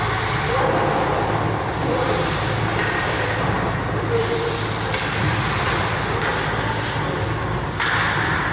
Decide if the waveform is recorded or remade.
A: recorded